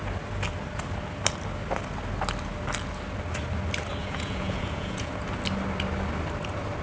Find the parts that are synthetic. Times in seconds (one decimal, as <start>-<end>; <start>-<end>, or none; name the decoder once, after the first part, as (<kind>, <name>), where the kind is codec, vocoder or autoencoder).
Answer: 4.0-5.1 (vocoder, Vocos)